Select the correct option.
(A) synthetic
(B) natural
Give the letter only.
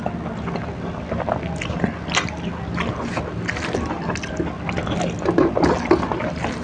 B